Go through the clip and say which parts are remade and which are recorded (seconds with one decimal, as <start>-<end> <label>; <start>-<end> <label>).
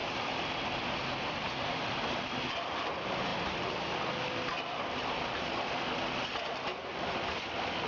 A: 0.0-7.9 recorded